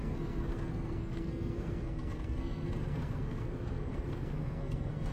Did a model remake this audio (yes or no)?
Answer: yes